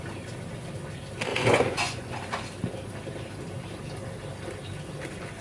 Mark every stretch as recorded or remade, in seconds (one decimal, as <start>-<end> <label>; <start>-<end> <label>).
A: 0.0-1.3 recorded; 1.3-2.1 remade; 2.1-5.4 recorded